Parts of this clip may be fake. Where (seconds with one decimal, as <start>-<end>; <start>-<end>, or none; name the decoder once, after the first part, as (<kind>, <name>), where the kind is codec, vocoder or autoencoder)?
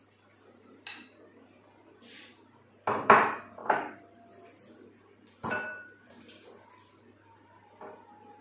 3.6-7.0 (vocoder, BigVGAN v2)